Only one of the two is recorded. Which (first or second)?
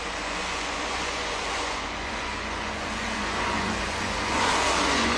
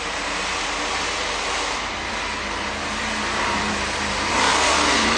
second